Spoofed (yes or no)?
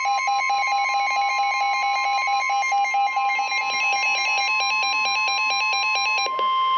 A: no